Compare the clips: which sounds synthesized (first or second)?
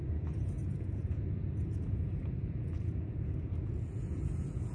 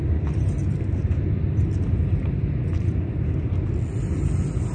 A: first